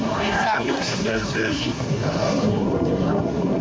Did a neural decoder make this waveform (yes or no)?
yes